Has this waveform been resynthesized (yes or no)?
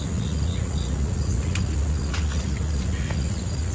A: yes